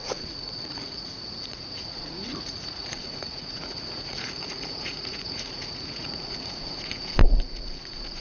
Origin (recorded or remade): remade